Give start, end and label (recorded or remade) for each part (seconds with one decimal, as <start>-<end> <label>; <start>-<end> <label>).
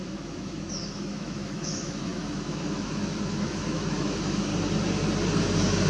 0.0-4.5 remade; 4.5-5.9 recorded